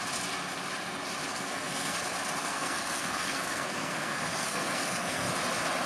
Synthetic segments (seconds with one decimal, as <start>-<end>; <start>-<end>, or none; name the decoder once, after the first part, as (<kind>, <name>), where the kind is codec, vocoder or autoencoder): 1.3-2.0 (codec, SNAC); 2.4-5.3

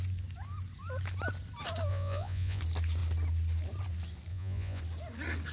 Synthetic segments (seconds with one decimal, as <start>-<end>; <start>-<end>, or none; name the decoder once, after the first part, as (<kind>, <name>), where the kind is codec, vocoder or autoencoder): 1.9-2.6 (vocoder, Vocos); 4.3-4.8

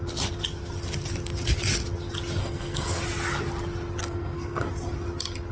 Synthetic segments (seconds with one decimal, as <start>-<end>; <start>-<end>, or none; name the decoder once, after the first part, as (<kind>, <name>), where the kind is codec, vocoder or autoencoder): 2.4-3.0 (codec, SNAC); 4.0-4.7

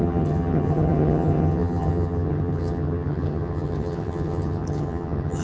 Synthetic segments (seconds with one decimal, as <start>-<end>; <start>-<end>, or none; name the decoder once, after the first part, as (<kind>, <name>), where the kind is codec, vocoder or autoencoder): 0.0-5.4 (vocoder, HiFi-GAN)

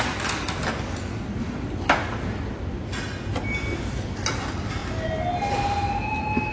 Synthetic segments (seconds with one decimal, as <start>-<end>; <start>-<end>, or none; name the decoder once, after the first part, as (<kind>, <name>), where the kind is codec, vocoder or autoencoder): none

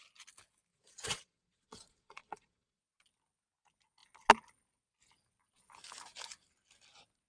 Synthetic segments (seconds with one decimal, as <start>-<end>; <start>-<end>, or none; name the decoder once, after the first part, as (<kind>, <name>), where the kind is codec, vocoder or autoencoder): 0.7-2.8 (vocoder, Vocos)

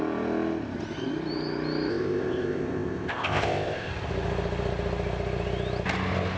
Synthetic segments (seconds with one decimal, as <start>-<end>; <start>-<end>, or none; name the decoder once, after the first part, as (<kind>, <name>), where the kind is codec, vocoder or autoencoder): 1.9-3.9 (codec, ZipCodec)

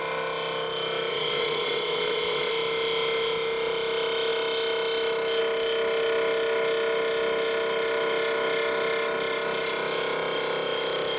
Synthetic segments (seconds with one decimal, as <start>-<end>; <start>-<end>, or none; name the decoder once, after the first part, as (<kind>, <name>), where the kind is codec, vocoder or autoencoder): 1.1-2.5 (vocoder, WaveNeXt)